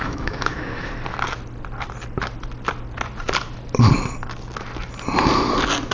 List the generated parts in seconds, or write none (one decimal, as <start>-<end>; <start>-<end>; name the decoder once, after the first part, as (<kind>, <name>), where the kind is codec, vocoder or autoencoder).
0.0-0.9 (autoencoder, DAC-VAE)